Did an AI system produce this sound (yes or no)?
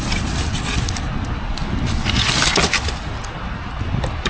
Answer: no